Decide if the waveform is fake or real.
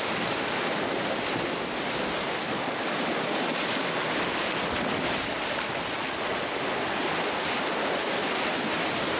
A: real